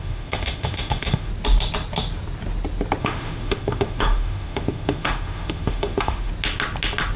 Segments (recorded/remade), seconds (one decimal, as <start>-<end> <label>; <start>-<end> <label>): 0.0-1.3 remade; 1.3-3.0 recorded; 3.0-6.3 remade; 6.3-7.2 recorded